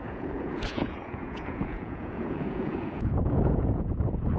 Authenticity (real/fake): fake